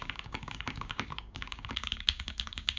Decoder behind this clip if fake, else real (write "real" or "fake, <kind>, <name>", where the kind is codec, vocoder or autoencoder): fake, codec, DAC